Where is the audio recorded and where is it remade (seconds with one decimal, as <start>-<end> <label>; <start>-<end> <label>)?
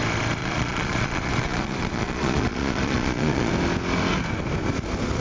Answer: 0.0-0.4 recorded; 0.4-3.5 remade; 3.5-5.2 recorded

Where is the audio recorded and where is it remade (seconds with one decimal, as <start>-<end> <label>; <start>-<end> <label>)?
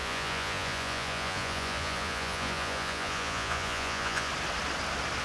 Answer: 0.0-4.3 remade; 4.3-5.2 recorded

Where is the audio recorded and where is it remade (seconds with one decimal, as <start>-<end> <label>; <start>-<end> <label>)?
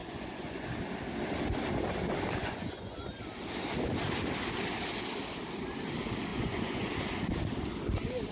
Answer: 0.0-0.7 remade; 0.7-2.4 recorded; 2.4-3.1 remade; 3.1-6.3 recorded; 6.3-6.9 remade; 6.9-8.3 recorded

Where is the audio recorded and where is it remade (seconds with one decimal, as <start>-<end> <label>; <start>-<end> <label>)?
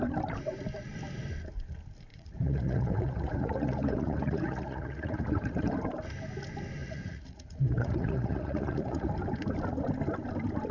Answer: 0.0-2.1 recorded; 2.1-5.7 remade; 5.7-6.8 recorded; 6.8-9.1 remade; 9.1-10.7 recorded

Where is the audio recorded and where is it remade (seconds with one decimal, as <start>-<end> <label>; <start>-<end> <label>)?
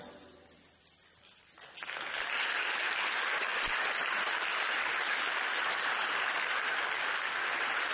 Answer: 0.0-7.9 recorded